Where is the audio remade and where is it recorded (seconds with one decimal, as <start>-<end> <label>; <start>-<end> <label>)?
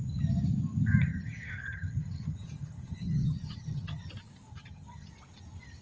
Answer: 0.0-1.1 recorded; 1.1-4.1 remade; 4.1-4.5 recorded; 4.5-5.1 remade; 5.1-5.8 recorded